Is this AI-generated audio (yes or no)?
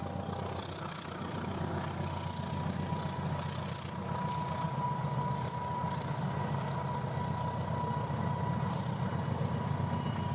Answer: no